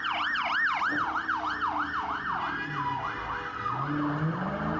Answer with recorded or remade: recorded